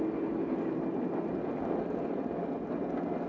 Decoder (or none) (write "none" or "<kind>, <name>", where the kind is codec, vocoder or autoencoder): none